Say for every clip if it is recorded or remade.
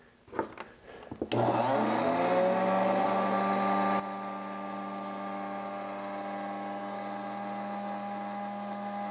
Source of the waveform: recorded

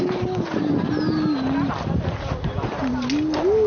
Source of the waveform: recorded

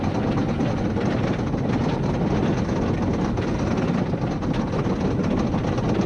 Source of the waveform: recorded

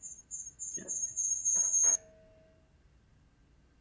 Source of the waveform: recorded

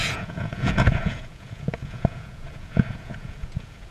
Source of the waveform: remade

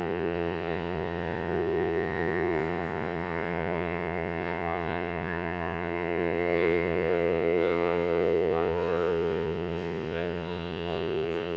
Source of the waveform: remade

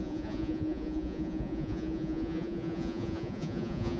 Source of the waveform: remade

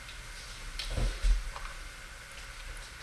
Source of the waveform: recorded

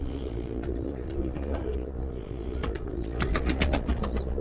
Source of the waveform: remade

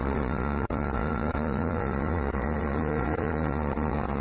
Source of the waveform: remade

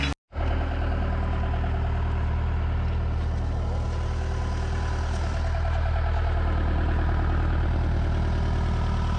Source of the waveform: recorded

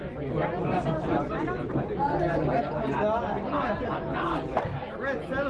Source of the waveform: recorded